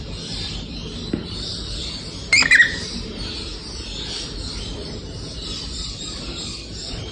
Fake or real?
real